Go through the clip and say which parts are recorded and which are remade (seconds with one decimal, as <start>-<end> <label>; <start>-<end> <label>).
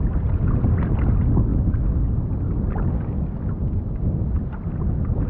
0.0-5.3 recorded